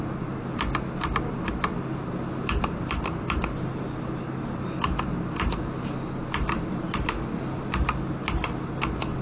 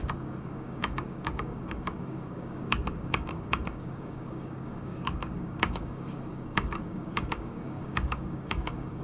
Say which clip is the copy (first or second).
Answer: second